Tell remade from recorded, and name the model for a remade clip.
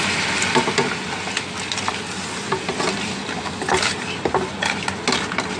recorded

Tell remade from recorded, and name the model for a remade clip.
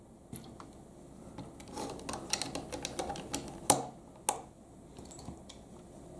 recorded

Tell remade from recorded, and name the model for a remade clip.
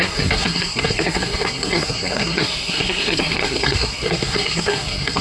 remade, codec, SNAC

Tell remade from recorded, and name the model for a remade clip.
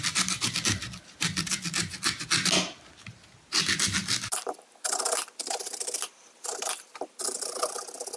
recorded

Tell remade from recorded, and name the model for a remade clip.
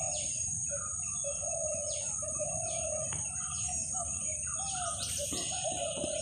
remade, vocoder, BigVGAN v2